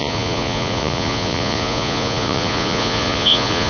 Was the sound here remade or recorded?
remade